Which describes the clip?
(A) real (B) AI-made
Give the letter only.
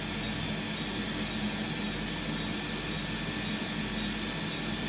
A